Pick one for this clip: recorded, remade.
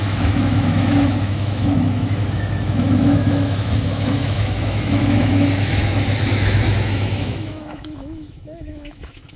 remade